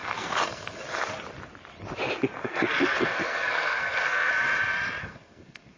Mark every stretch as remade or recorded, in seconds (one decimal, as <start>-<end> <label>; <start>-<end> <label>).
0.0-0.8 remade; 0.8-2.4 recorded; 2.4-4.3 remade; 4.3-5.0 recorded; 5.0-5.8 remade